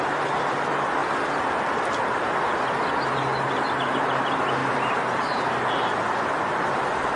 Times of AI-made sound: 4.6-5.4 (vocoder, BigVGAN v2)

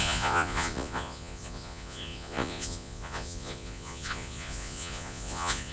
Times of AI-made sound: 0.0-5.7 (vocoder, Vocos)

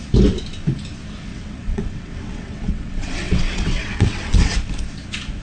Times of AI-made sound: 1.3-4.5 (vocoder, WaveNeXt)

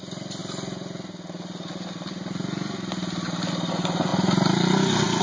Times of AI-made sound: none